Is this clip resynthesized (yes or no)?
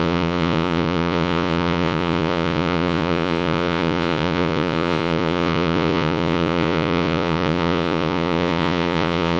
yes